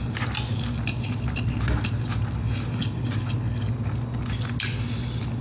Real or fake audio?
real